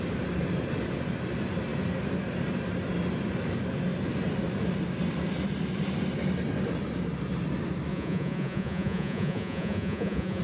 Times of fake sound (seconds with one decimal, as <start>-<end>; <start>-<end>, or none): 7.9-10.4